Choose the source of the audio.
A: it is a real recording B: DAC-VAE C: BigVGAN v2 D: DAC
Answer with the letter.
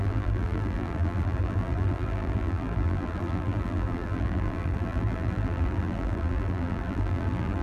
C